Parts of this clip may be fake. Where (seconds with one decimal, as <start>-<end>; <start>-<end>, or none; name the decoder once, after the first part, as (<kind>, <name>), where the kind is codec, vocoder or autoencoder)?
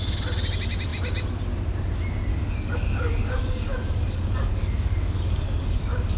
2.3-6.2 (codec, DAC)